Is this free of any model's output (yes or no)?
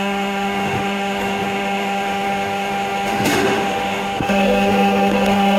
no